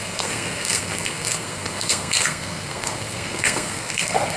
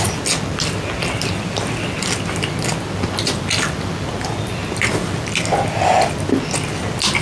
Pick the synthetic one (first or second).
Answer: first